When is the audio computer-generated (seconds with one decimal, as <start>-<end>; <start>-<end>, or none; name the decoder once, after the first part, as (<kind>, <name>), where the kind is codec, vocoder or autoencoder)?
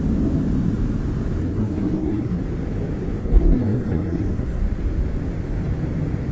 1.4-2.4 (codec, SNAC); 3.2-4.6